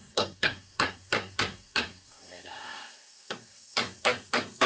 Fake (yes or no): yes